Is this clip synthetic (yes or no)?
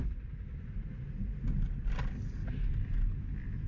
no